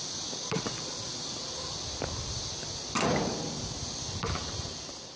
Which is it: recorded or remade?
remade